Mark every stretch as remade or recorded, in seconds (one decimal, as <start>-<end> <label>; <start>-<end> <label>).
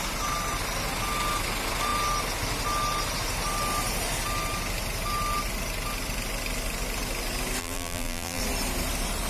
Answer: 0.0-7.6 recorded; 7.6-8.4 remade; 8.4-9.3 recorded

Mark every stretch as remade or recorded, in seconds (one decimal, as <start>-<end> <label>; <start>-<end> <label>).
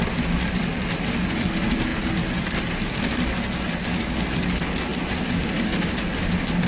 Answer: 0.0-6.7 recorded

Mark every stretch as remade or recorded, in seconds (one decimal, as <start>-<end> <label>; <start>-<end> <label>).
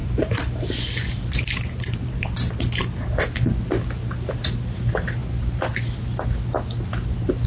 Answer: 0.0-3.2 remade; 3.2-7.5 recorded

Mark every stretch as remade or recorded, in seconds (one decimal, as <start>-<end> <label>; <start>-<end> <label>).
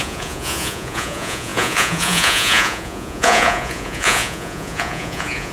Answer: 0.0-5.5 remade